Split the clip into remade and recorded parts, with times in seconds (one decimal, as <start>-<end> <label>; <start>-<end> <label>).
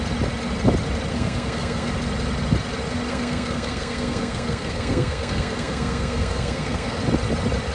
0.0-1.1 recorded; 1.1-1.9 remade; 1.9-3.1 recorded; 3.1-7.0 remade; 7.0-7.7 recorded